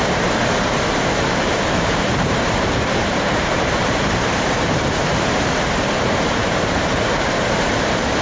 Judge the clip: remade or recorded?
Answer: remade